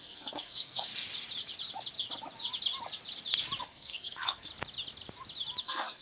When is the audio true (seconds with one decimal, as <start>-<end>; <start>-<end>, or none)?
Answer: 0.9-3.6; 4.5-5.6